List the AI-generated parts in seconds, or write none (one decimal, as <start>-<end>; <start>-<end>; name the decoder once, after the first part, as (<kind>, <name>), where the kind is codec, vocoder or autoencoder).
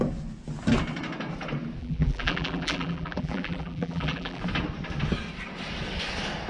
1.8-4.4 (vocoder, BigVGAN v2)